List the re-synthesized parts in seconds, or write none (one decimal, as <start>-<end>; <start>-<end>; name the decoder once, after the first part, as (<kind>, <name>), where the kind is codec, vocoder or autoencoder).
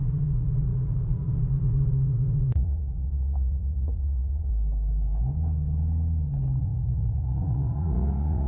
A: 0.0-4.5 (vocoder, Vocos); 6.6-8.5